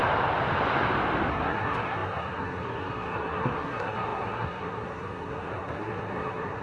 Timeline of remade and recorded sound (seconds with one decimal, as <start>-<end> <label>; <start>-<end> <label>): 0.0-1.3 recorded; 1.3-6.6 remade

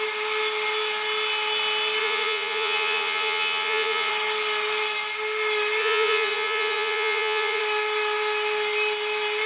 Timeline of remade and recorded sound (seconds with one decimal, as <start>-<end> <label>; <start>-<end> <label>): 0.0-2.0 recorded; 2.0-4.1 remade; 4.1-5.8 recorded; 5.8-7.6 remade; 7.6-9.5 recorded

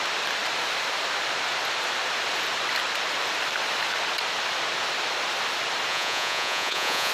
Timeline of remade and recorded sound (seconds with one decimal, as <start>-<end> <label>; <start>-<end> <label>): 0.0-5.9 recorded; 5.9-7.1 remade

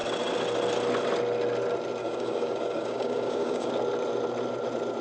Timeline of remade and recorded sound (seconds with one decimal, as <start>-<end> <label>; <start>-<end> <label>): 0.0-2.0 recorded; 2.0-3.7 remade; 3.7-5.0 recorded

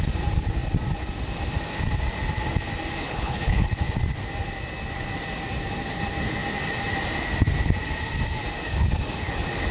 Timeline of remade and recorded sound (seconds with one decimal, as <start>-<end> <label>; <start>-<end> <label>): 0.0-3.0 recorded; 3.0-3.7 remade; 3.7-9.7 recorded

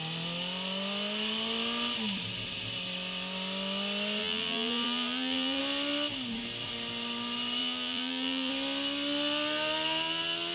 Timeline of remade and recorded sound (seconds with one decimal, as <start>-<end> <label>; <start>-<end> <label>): 0.0-4.2 recorded; 4.2-5.6 remade; 5.6-7.6 recorded; 7.6-8.5 remade; 8.5-10.5 recorded

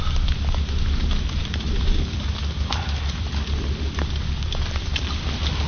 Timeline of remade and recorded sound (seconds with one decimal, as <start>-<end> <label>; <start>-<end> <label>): 0.0-1.4 recorded; 1.4-4.8 remade; 4.8-5.7 recorded